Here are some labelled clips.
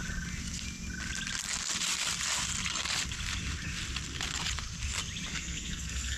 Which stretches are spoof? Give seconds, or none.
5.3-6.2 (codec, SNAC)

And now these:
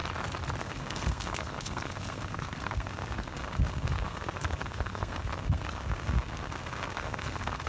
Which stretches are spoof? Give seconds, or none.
0.6-7.7 (codec, SNAC)